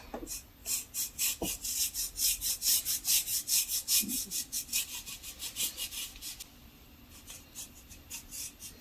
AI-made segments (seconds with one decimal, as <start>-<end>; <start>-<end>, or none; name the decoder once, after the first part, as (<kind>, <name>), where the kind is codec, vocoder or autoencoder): none